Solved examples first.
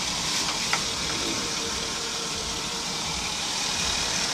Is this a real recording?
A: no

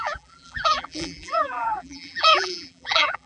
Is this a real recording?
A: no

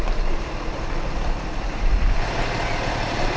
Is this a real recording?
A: yes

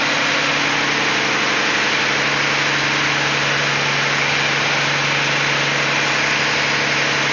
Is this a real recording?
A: yes